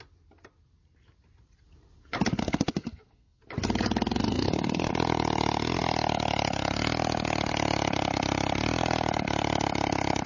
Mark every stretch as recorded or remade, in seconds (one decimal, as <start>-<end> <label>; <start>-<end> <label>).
0.0-2.4 recorded; 2.4-3.4 remade; 3.4-4.2 recorded; 4.2-4.9 remade; 4.9-10.3 recorded